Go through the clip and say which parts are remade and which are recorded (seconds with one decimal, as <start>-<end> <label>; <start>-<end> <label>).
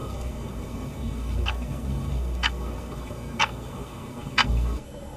0.0-5.2 remade